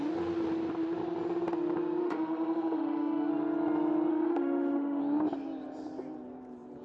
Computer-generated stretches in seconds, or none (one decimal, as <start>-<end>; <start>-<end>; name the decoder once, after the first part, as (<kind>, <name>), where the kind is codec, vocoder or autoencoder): 2.0-3.3 (autoencoder, DAC-VAE); 4.1-5.0